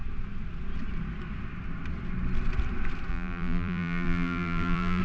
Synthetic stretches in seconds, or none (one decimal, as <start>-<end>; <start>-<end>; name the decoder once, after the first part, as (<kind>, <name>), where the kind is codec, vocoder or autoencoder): 3.1-5.0 (vocoder, BigVGAN v2)